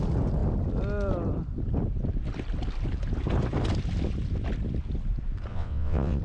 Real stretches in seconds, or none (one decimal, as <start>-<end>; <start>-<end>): 0.0-5.5

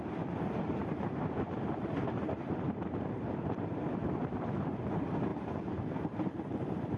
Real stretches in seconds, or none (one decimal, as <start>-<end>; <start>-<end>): none

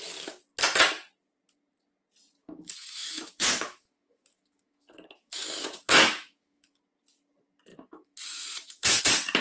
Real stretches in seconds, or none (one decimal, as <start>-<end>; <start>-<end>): 0.0-2.4; 6.8-7.7; 9.0-9.4

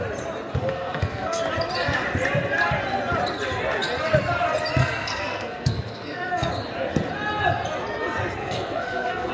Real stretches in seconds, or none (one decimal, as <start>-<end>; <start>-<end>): 0.0-0.6; 1.4-4.8; 6.5-8.4